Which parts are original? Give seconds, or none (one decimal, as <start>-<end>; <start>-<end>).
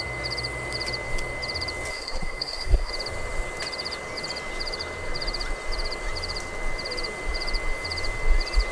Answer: 0.0-1.9; 2.9-8.7